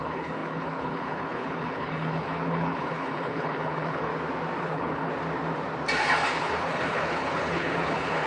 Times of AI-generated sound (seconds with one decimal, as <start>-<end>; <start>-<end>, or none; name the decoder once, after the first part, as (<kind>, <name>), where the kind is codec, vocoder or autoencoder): 0.0-4.1 (codec, HILCodec); 4.6-5.1; 6.4-8.3